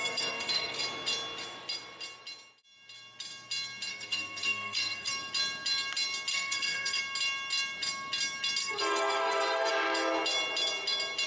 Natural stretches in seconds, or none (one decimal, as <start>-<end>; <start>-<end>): 0.8-3.9; 5.1-6.3; 7.0-8.6; 9.7-11.3